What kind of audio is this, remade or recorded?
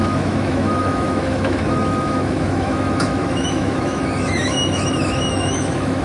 remade